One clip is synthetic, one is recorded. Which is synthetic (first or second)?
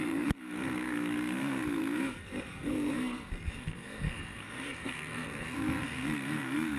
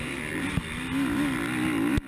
first